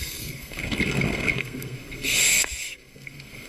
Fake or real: fake